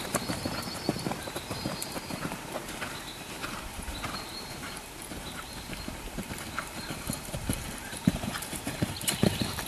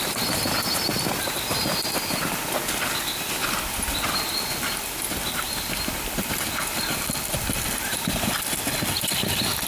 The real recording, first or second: second